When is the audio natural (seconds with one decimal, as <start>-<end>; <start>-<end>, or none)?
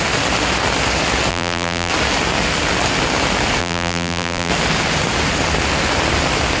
0.0-1.3; 1.9-3.6; 4.5-6.6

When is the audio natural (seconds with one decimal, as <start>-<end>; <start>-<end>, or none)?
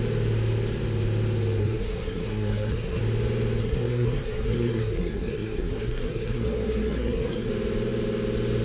0.0-1.6; 3.0-3.6; 7.5-8.6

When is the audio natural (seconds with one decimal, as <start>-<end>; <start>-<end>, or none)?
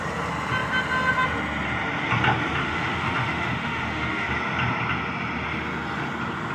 0.0-2.6; 4.3-6.5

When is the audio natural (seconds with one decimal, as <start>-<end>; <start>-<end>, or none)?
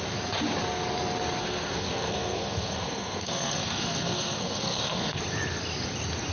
0.0-1.4; 5.2-6.3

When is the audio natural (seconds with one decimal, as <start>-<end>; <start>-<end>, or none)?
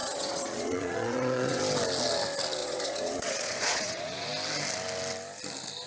1.6-2.6; 4.3-5.9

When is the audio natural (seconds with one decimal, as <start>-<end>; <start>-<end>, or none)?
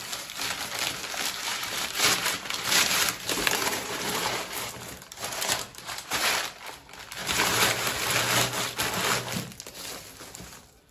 0.0-1.5; 6.3-7.2; 7.9-10.9